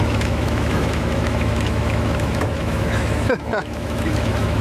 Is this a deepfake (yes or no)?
yes